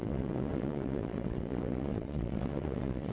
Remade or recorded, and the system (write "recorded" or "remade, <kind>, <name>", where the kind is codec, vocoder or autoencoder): remade, vocoder, WaveNeXt